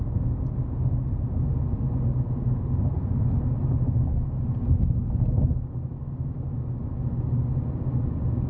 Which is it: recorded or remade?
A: recorded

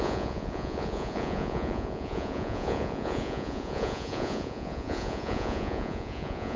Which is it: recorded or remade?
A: remade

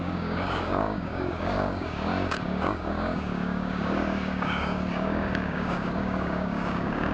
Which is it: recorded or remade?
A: remade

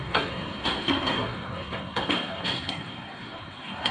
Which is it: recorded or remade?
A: remade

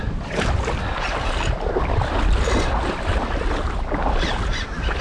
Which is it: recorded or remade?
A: recorded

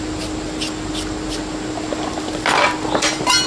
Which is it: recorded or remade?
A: recorded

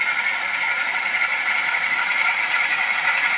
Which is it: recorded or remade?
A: remade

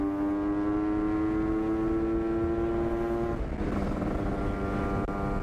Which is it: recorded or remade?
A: recorded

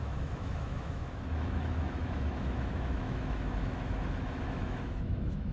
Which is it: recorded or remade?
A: remade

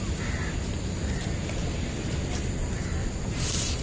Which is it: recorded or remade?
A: recorded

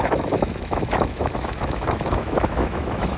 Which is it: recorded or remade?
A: remade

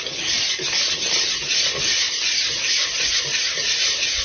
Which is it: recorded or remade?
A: recorded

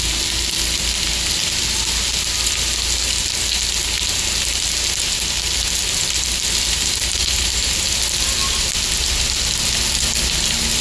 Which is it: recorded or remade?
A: recorded